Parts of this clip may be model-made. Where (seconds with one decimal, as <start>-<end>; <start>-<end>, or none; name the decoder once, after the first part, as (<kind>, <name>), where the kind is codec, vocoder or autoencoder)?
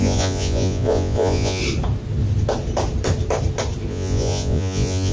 0.0-1.6 (vocoder, Vocos); 3.9-5.1